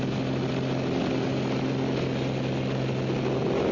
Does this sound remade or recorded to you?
recorded